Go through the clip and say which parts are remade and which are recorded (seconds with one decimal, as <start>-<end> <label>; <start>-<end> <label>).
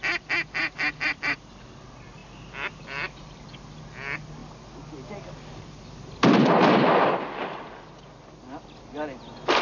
0.0-9.6 recorded